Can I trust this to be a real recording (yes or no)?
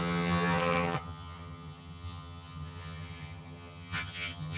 no